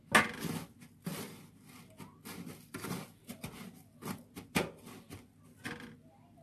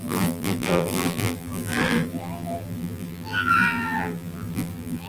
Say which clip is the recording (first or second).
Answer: first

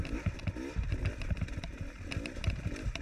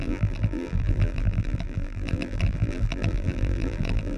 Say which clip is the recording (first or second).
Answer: first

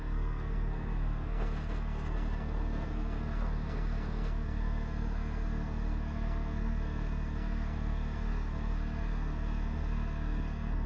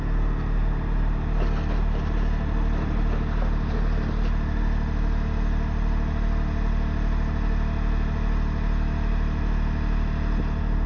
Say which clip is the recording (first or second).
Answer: second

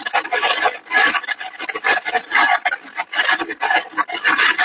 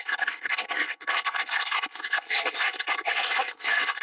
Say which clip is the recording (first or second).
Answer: first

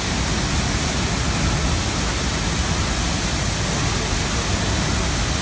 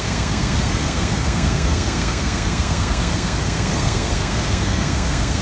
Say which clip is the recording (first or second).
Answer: first